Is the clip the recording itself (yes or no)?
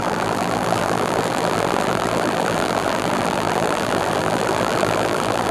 no